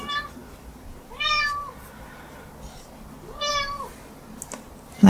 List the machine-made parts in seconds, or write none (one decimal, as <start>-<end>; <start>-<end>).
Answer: none